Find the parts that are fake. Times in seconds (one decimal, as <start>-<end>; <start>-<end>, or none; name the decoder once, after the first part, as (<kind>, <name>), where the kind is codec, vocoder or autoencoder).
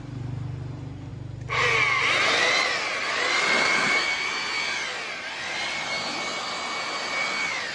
none